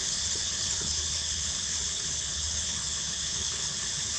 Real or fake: fake